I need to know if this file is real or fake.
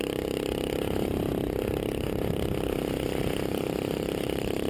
fake